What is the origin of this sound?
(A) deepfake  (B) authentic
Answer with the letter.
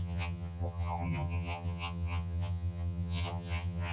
A